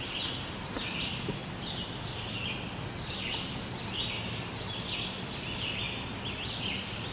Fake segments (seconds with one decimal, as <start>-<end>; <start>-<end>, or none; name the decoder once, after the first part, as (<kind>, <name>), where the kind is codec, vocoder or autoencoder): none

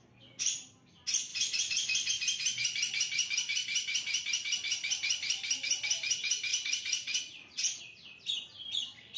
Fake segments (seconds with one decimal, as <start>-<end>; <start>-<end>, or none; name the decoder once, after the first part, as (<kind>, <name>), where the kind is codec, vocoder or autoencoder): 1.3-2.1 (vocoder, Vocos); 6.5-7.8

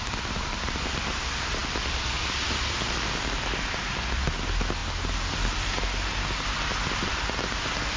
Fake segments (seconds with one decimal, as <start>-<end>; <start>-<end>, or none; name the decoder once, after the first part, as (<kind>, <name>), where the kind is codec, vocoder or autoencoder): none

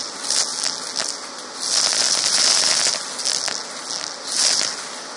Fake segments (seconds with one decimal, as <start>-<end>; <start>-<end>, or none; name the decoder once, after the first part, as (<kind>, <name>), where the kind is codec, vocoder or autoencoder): none

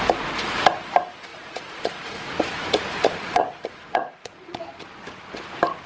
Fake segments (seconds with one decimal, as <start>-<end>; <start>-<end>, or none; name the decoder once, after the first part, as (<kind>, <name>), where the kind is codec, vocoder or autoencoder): 1.3-4.6 (vocoder, Vocos)

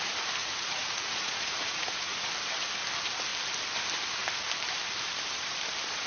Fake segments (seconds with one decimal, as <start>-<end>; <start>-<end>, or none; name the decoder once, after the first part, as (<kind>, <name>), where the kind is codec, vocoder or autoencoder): 0.4-2.3 (vocoder, Vocos)